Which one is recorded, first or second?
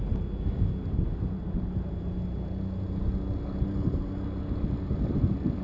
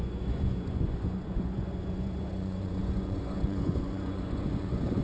first